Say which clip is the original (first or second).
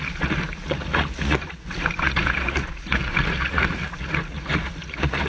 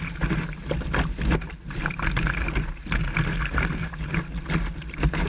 second